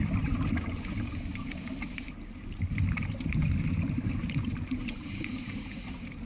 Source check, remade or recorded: remade